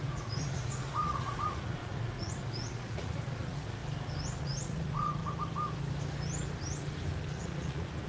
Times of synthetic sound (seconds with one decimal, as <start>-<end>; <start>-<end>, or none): 0.0-3.8; 4.4-5.2; 7.3-8.1